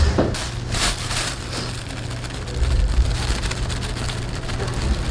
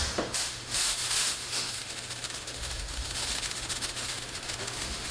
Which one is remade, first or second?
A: second